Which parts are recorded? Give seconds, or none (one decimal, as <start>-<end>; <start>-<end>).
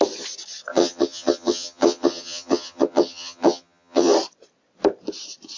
0.0-0.7; 4.1-5.6